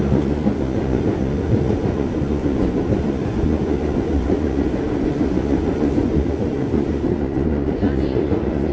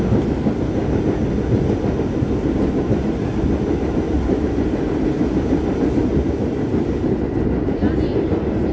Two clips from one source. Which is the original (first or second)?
second